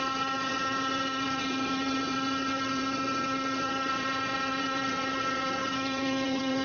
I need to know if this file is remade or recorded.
remade